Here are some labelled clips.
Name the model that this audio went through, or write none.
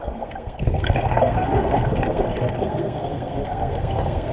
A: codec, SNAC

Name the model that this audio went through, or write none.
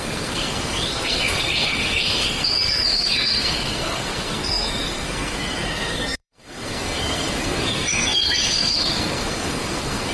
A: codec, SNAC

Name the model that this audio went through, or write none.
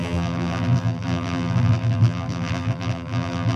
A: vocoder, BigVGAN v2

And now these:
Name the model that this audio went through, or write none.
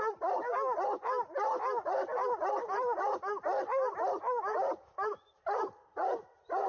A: none